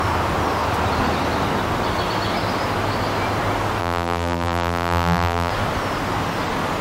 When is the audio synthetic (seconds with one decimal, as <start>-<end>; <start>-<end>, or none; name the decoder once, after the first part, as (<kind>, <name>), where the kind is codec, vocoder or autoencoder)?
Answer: 3.8-5.5 (vocoder, BigVGAN v2)